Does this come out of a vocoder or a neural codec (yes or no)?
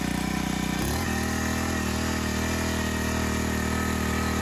no